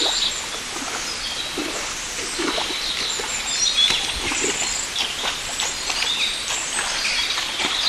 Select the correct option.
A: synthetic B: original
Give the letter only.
B